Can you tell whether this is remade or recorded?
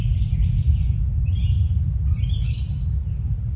recorded